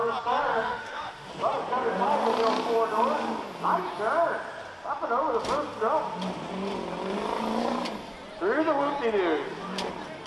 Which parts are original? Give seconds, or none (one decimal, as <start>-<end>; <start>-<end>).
0.0-0.5; 1.3-10.3